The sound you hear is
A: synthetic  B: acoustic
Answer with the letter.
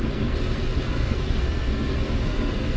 A